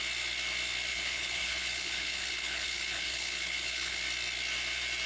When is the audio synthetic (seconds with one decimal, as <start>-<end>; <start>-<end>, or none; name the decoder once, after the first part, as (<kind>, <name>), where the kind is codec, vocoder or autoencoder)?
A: 0.9-4.0 (codec, HILCodec)